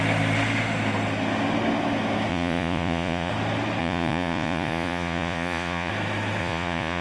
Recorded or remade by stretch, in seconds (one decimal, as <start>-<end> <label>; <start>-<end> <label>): 0.0-2.3 recorded; 2.3-3.3 remade; 3.3-3.8 recorded; 3.8-5.9 remade; 5.9-6.4 recorded; 6.4-7.0 remade